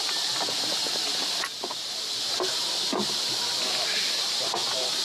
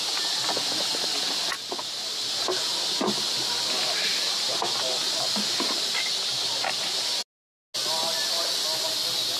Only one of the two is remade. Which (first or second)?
first